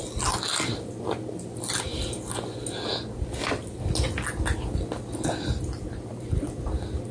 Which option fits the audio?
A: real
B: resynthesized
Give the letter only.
A